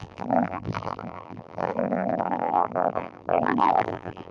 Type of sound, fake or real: fake